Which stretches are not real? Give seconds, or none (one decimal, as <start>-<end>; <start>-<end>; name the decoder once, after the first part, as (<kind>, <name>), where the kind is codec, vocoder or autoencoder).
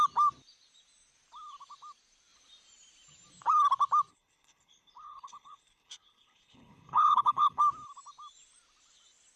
4.1-7.6 (codec, HILCodec)